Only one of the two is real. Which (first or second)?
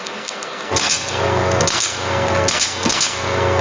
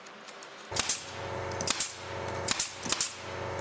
second